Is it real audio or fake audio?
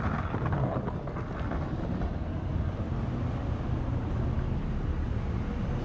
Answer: real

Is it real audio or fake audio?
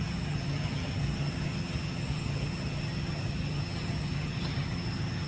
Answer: fake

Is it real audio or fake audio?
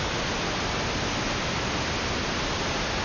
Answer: real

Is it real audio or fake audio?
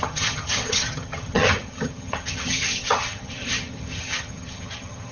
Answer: fake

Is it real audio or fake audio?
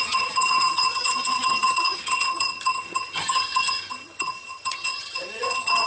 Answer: fake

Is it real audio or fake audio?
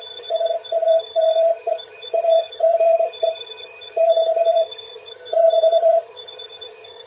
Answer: fake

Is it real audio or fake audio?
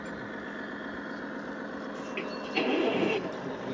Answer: real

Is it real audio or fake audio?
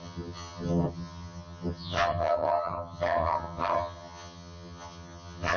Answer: fake